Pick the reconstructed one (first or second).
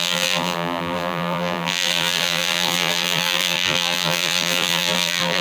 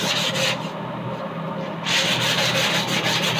first